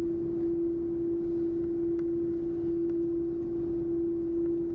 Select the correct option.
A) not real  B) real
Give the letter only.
B